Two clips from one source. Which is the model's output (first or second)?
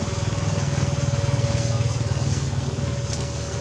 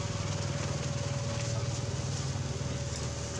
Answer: first